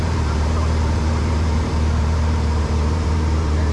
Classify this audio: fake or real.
fake